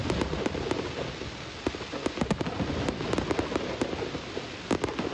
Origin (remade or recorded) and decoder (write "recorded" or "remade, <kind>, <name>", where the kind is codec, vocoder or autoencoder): recorded